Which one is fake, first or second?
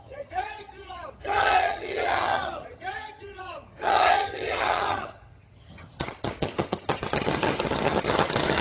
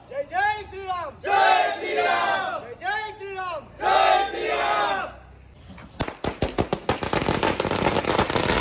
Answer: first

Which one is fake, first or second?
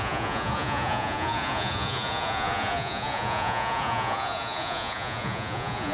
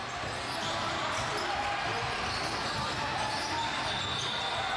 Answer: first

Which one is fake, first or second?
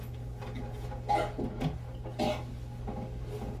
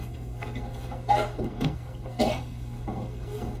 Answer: second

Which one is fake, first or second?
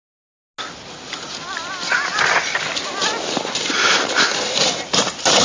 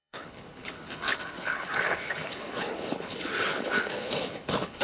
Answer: second